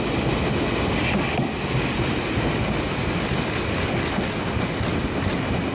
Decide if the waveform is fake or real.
real